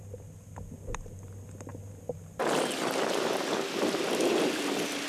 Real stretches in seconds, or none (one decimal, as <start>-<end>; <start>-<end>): 0.0-5.1

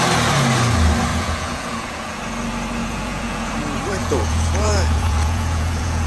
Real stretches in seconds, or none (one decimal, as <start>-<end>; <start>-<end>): 0.0-1.1; 2.2-2.8; 3.5-4.0

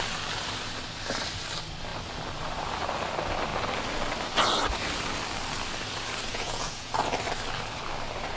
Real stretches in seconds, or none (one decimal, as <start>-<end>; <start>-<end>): 0.0-6.3; 6.9-8.4

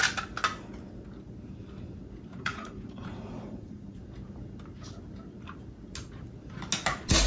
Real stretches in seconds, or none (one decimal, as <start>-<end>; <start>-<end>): 0.0-2.3; 4.0-7.3